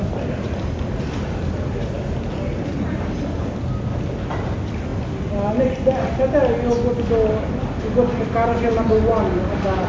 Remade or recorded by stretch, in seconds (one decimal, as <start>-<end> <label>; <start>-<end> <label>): 0.0-9.9 recorded